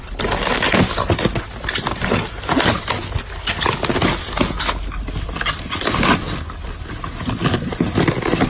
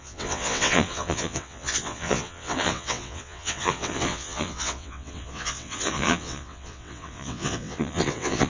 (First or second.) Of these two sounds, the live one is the first